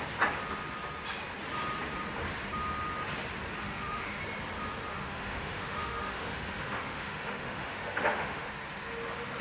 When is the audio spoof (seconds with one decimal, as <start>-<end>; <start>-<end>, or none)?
3.6-4.2; 4.9-8.5